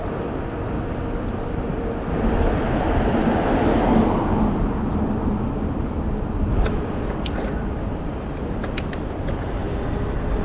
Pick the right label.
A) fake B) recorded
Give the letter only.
B